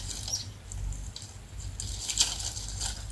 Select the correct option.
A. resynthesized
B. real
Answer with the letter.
B